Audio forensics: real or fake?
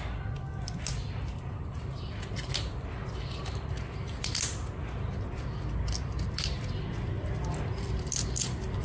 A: real